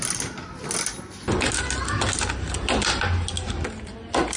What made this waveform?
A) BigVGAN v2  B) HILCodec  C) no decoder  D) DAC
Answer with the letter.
C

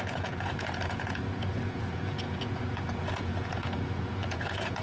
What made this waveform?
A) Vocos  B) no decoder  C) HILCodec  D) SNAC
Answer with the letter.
A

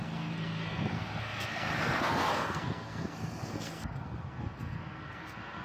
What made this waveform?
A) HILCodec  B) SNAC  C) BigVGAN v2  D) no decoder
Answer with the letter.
B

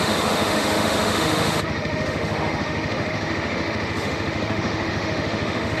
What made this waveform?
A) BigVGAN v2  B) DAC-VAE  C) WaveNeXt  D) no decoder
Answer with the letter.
B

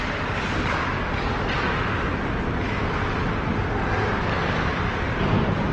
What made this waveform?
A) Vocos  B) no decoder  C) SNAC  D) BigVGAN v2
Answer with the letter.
B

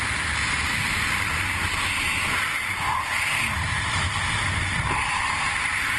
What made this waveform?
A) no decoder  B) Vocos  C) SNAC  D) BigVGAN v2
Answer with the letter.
A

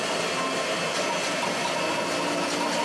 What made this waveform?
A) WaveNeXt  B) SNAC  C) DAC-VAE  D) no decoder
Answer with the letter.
D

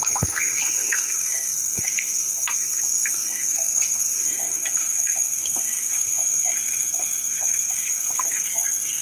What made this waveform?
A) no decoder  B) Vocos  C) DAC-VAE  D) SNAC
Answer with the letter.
D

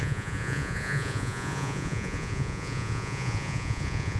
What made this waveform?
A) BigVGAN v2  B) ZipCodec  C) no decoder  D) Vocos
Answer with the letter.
D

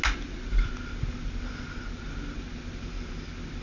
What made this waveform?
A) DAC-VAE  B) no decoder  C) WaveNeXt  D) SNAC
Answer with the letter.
B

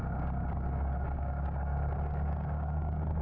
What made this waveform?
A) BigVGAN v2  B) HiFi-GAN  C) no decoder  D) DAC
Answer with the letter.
D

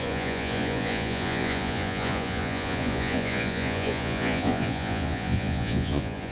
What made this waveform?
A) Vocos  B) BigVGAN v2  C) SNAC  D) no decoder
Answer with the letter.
A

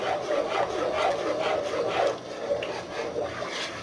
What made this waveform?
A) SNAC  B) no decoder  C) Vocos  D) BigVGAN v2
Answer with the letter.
B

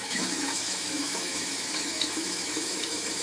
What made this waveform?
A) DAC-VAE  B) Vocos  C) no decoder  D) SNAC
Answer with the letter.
A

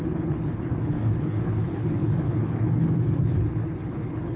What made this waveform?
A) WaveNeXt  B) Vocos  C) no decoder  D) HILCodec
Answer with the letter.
D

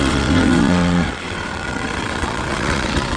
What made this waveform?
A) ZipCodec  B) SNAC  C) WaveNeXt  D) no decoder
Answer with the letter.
C